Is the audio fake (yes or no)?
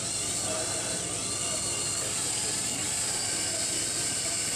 no